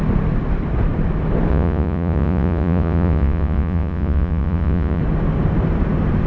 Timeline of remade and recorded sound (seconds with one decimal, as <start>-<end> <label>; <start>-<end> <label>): 0.0-1.5 recorded; 1.5-5.0 remade; 5.0-6.3 recorded